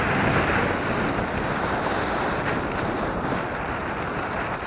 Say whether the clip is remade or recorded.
recorded